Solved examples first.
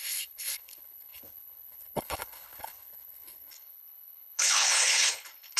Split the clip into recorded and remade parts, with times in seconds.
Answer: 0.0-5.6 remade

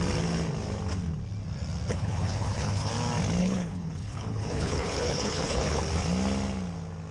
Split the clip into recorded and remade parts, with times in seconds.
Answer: 0.0-1.9 recorded; 1.9-2.9 remade; 2.9-3.4 recorded; 3.4-5.8 remade; 5.8-7.1 recorded

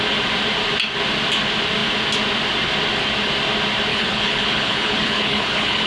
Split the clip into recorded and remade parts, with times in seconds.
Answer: 0.0-3.9 recorded; 3.9-5.9 remade

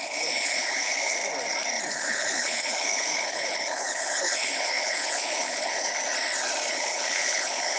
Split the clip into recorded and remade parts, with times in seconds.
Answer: 0.0-1.2 remade; 1.2-1.9 recorded; 1.9-5.9 remade; 5.9-6.7 recorded; 6.7-7.8 remade

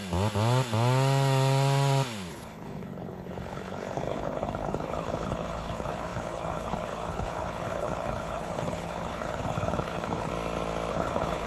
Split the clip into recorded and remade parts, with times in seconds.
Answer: 0.0-2.3 recorded; 2.3-10.3 remade; 10.3-10.9 recorded; 10.9-11.5 remade